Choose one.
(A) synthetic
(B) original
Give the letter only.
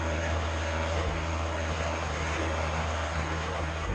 A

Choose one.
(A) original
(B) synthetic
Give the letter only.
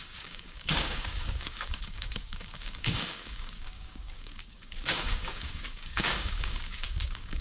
B